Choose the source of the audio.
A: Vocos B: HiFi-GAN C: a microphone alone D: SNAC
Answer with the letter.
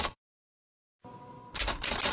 C